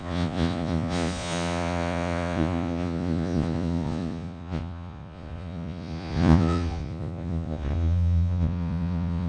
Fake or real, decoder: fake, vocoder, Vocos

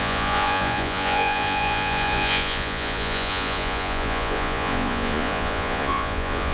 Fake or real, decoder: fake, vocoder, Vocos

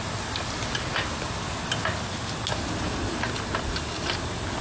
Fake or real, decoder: real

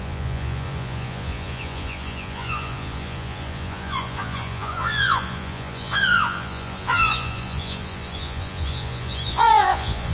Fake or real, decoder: fake, vocoder, Vocos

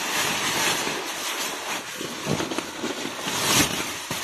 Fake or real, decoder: real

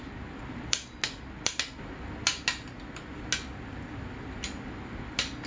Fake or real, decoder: real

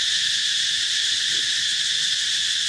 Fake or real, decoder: real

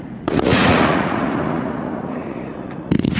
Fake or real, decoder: fake, vocoder, Vocos